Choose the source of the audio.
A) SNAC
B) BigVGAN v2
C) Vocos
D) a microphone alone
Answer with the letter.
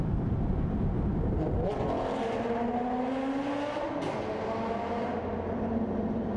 D